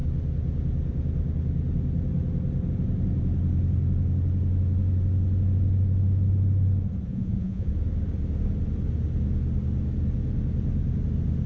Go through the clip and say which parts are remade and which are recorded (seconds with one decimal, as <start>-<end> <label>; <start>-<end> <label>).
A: 0.0-7.1 recorded; 7.1-7.7 remade; 7.7-11.5 recorded